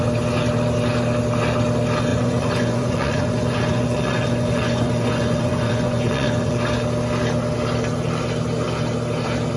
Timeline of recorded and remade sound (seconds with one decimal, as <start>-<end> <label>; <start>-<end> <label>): 0.0-2.1 recorded; 2.1-6.6 remade; 6.6-9.6 recorded